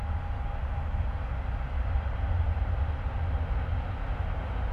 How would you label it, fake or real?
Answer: real